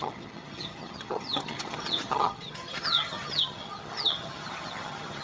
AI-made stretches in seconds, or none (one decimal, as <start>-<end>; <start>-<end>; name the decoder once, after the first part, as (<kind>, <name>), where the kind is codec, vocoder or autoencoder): 0.0-5.2 (vocoder, HiFi-GAN)